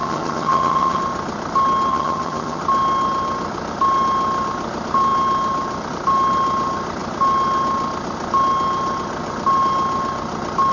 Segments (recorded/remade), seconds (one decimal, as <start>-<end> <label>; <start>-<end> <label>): 0.0-1.0 remade; 1.0-1.9 recorded; 1.9-2.6 remade; 2.6-10.7 recorded